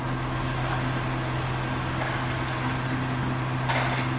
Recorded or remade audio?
recorded